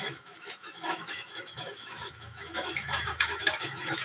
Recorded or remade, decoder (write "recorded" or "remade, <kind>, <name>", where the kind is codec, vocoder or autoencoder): remade, autoencoder, DAC-VAE